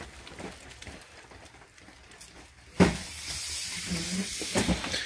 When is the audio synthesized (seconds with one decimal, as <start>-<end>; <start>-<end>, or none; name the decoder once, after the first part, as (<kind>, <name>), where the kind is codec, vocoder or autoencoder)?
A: none